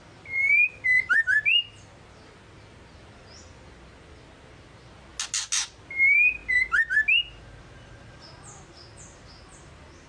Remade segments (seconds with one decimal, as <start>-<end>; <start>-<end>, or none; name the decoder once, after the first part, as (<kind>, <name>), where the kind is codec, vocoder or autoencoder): none